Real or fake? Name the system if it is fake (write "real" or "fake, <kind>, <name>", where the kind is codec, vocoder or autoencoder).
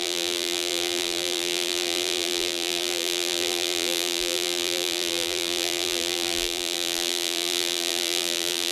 fake, vocoder, BigVGAN v2